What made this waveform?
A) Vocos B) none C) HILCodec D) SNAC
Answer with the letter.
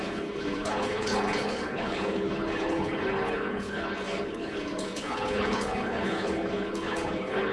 C